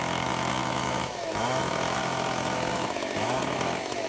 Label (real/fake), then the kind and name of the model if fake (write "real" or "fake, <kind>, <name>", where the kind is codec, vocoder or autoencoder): fake, autoencoder, DAC-VAE